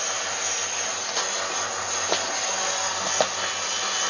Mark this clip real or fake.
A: real